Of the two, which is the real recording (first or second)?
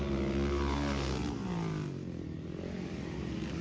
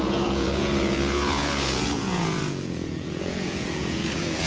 first